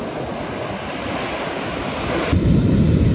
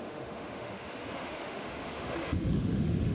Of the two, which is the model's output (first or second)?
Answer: second